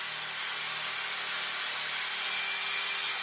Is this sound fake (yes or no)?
no